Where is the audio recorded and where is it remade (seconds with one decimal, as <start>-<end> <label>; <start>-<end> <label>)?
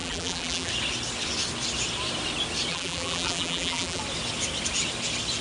0.0-0.7 remade; 0.7-2.7 recorded; 2.7-4.0 remade; 4.0-5.4 recorded